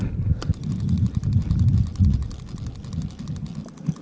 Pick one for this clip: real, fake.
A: real